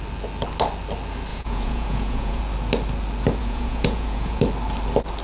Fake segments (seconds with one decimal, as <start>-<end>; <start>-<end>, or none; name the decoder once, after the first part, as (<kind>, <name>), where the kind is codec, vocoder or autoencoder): 1.3-2.4 (vocoder, Vocos); 3.4-4.4